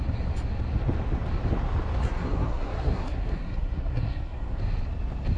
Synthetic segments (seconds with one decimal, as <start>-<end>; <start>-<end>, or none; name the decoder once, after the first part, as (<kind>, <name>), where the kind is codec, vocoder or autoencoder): 2.0-4.6 (codec, SNAC)